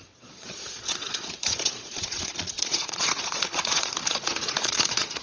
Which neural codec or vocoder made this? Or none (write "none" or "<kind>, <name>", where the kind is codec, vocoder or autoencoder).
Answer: vocoder, Vocos